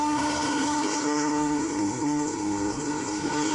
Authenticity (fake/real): fake